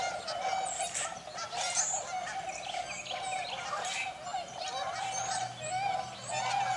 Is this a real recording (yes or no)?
yes